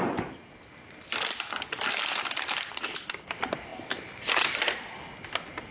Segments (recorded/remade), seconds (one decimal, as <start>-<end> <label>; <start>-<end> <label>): 0.0-5.7 remade